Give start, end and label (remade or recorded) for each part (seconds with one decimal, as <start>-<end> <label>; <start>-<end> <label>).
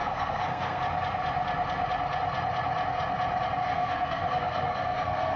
0.0-0.8 remade; 0.8-3.6 recorded; 3.6-5.4 remade